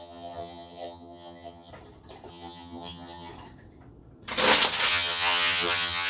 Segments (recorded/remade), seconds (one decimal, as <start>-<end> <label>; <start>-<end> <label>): 0.0-1.7 remade; 1.7-2.3 recorded; 2.3-3.3 remade; 3.3-4.9 recorded; 4.9-6.1 remade